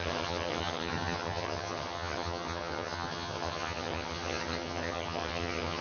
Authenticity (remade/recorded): remade